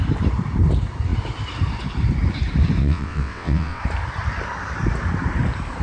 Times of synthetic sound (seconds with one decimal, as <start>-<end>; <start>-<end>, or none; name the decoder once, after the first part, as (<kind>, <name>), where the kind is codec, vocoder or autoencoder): 2.8-3.8 (vocoder, WaveNeXt)